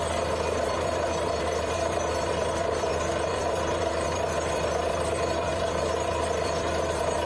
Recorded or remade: remade